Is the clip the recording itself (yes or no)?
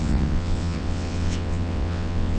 no